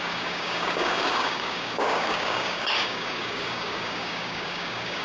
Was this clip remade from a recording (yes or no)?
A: yes